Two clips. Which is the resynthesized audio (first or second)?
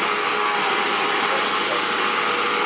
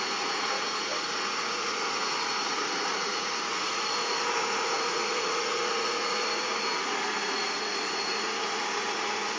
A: second